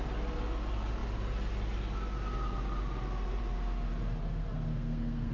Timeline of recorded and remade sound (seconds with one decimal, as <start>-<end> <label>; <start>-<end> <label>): 0.0-4.2 recorded; 4.2-5.3 remade